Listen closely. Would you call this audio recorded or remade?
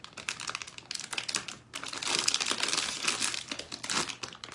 recorded